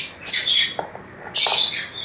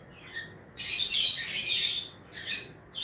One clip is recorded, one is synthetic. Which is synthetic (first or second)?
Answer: second